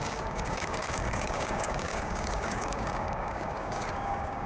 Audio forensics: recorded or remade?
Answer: remade